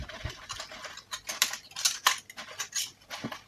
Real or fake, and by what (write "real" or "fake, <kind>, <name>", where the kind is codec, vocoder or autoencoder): real